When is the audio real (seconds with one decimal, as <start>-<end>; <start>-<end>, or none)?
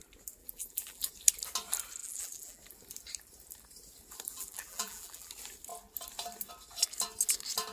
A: 0.0-0.4; 1.1-2.0; 2.6-4.3; 5.3-7.7